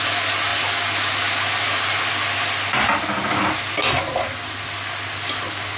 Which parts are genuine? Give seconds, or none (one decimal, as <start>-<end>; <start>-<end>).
0.0-5.8